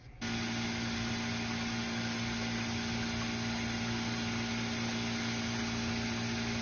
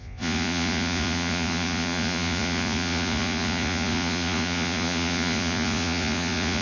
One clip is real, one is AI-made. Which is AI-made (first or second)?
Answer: second